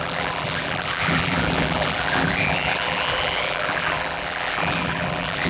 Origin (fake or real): fake